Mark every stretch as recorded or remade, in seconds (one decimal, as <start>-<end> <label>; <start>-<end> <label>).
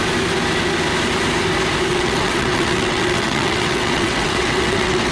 0.0-1.9 recorded; 1.9-5.1 remade